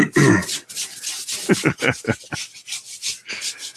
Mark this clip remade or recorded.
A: recorded